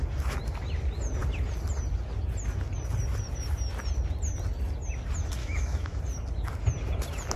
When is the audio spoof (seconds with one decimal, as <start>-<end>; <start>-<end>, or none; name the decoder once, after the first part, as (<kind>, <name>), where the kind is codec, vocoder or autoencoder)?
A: 5.4-6.0 (autoencoder, DAC-VAE)